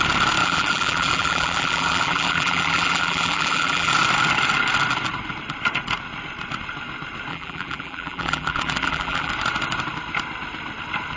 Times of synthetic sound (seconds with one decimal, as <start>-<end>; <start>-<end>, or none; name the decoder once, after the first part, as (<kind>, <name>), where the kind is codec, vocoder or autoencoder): 0.4-3.9 (vocoder, BigVGAN v2); 7.3-9.3